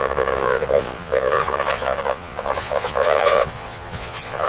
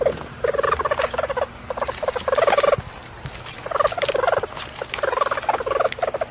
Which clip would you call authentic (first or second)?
second